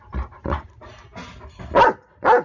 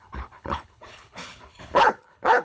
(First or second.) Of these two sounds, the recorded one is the first